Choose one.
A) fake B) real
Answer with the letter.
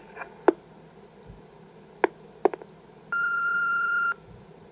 B